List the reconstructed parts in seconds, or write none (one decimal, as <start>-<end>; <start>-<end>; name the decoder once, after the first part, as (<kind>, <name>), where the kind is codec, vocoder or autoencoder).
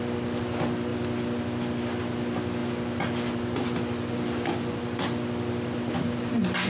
none